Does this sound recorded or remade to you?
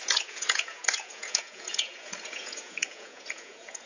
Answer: remade